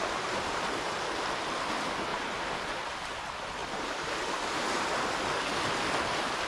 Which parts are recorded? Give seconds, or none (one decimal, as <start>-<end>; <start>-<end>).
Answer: 0.0-2.1; 2.8-6.5